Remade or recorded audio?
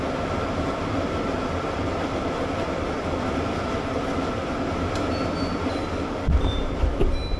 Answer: remade